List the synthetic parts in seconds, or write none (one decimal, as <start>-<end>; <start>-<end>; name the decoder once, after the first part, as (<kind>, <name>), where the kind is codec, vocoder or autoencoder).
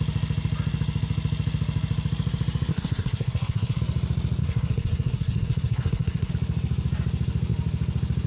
2.7-3.8 (codec, SNAC); 4.4-6.3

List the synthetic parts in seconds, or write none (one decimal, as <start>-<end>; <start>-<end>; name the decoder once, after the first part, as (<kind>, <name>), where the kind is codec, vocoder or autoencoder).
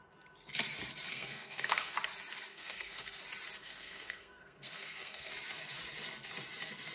1.1-1.9 (codec, SNAC); 2.5-3.2; 3.6-5.3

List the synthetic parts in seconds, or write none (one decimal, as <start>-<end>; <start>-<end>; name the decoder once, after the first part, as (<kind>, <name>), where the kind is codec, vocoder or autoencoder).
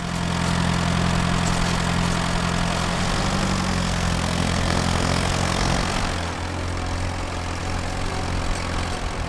3.7-6.0 (codec, SNAC)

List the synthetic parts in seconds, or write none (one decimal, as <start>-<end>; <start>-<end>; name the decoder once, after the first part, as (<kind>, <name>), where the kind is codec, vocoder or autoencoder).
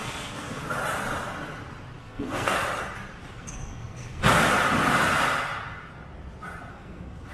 0.0-0.6 (codec, SNAC); 2.0-2.6; 3.3-4.2; 6.7-7.3